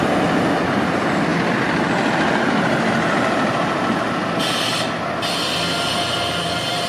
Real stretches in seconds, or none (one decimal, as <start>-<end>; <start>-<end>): 0.0-6.9